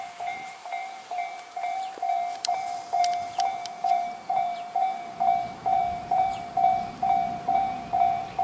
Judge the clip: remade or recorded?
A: remade